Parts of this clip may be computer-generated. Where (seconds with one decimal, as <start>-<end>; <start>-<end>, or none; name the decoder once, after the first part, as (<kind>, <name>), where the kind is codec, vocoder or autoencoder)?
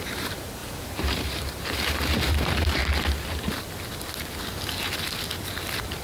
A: 0.0-2.8 (vocoder, BigVGAN v2)